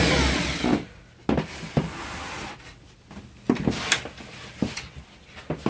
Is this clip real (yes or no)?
yes